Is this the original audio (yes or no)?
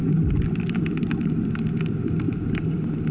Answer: yes